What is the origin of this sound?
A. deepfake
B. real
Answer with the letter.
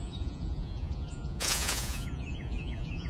A